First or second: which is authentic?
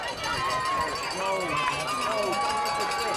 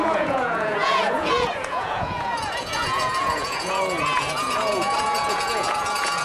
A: first